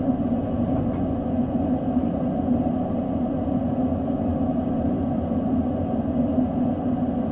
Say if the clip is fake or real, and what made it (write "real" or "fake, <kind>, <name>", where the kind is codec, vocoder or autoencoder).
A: real